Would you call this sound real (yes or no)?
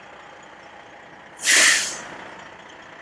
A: yes